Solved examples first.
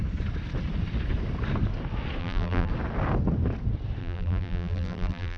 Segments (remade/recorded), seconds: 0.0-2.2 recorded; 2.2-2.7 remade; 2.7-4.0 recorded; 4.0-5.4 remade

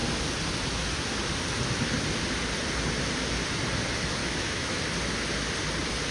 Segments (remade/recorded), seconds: 0.0-4.2 recorded; 4.2-4.8 remade; 4.8-6.1 recorded

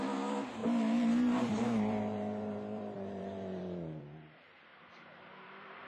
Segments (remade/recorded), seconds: 0.0-0.6 recorded; 0.6-4.0 remade; 4.0-4.7 recorded; 4.7-5.9 remade